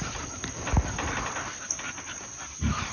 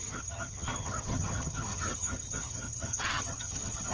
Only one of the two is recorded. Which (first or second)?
first